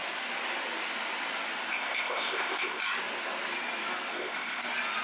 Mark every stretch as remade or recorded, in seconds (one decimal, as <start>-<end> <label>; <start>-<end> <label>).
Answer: 0.0-1.7 recorded; 1.7-2.8 remade; 2.8-4.1 recorded; 4.1-4.6 remade; 4.6-5.0 recorded